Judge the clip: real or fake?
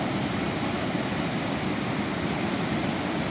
real